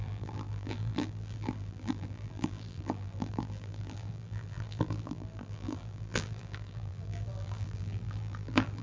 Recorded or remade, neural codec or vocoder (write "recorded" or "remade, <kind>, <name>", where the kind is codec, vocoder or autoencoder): remade, vocoder, BigVGAN v2